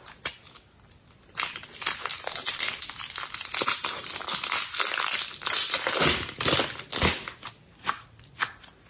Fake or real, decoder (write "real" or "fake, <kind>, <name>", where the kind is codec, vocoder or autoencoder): real